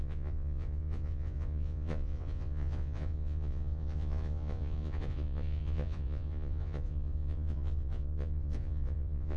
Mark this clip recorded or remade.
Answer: remade